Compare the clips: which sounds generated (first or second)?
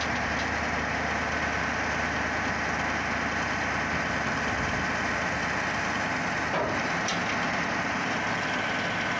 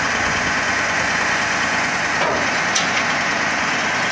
second